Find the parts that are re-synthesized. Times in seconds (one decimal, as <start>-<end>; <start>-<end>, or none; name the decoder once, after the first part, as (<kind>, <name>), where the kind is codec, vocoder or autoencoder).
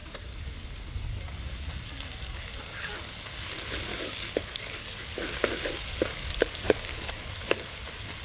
3.9-5.1 (codec, DAC); 6.1-7.3